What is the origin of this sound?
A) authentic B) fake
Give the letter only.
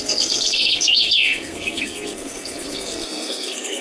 B